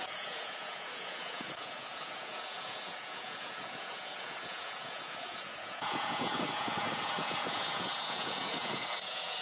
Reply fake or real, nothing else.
fake